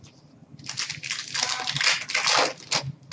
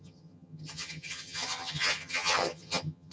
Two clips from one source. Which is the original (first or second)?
first